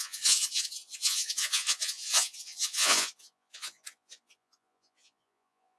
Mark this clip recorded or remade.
remade